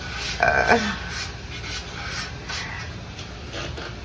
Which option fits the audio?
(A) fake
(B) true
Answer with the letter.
B